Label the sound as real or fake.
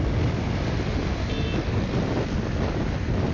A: real